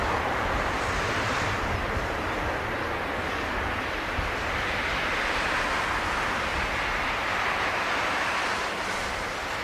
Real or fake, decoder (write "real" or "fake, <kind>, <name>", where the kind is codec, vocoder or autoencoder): real